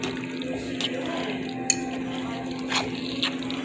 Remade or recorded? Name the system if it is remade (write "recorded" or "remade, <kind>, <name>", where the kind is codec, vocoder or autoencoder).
recorded